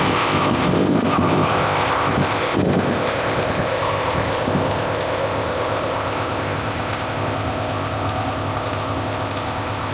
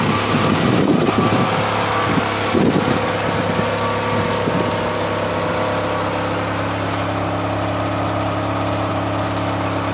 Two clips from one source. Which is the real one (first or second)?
second